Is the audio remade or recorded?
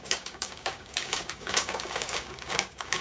remade